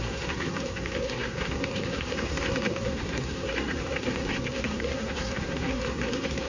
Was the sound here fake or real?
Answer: fake